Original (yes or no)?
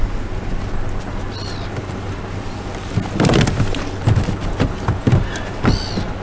yes